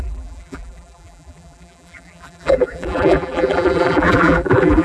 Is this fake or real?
fake